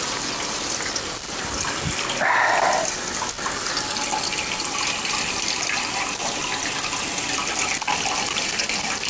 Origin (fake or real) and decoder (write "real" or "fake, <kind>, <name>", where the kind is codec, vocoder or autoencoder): real